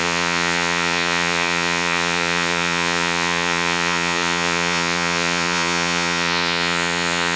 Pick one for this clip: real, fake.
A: fake